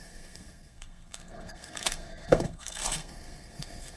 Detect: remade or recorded remade